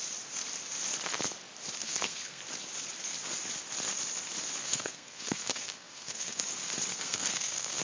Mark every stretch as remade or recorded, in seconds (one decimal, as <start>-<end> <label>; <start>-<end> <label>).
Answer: 0.0-1.8 recorded; 1.8-2.4 remade; 2.4-4.6 recorded; 4.6-6.4 remade; 6.4-6.9 recorded; 6.9-7.8 remade